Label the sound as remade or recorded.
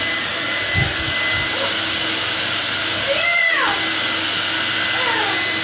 recorded